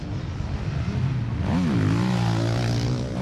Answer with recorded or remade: recorded